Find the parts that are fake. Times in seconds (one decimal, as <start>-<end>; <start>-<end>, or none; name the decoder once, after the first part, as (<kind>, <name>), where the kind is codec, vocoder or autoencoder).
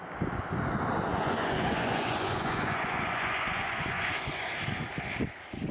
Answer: 1.1-4.5 (vocoder, Vocos)